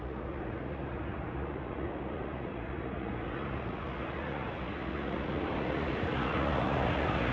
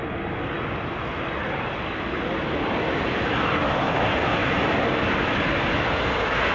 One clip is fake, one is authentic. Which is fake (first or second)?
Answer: first